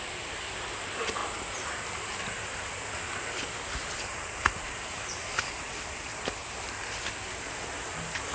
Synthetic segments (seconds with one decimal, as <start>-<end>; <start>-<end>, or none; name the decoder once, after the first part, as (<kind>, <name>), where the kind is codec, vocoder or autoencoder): none